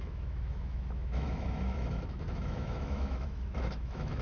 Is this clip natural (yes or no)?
no